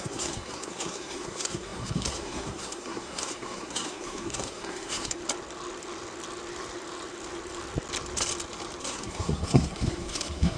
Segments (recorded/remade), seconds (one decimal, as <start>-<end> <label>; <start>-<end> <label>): 0.0-5.2 remade; 5.2-8.8 recorded; 8.8-10.6 remade